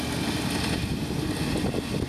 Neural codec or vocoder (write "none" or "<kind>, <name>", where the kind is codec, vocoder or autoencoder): none